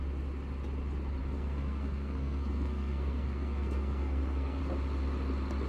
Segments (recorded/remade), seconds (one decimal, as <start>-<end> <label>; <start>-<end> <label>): 0.0-1.2 recorded; 1.2-4.6 remade; 4.6-5.7 recorded